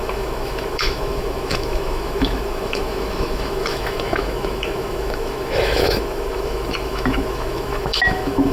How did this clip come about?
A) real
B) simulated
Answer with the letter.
B